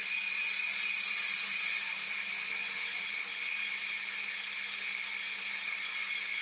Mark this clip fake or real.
real